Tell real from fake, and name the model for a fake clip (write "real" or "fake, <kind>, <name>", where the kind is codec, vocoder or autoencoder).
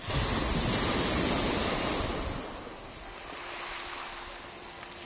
real